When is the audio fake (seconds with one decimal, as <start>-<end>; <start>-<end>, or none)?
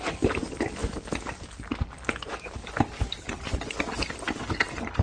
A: none